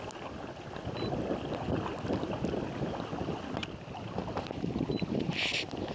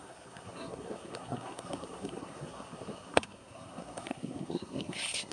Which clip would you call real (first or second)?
first